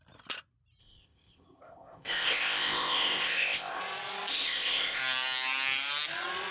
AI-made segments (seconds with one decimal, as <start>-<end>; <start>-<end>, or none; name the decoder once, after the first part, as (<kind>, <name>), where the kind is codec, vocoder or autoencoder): 0.8-3.8 (codec, ZipCodec); 4.3-5.0